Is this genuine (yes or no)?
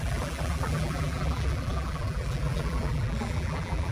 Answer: no